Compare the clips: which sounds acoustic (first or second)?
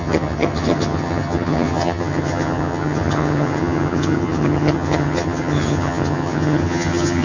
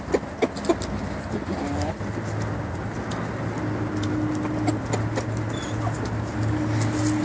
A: second